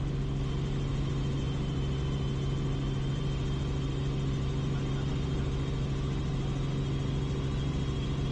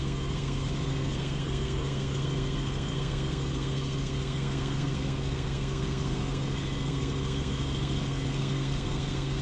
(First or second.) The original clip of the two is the first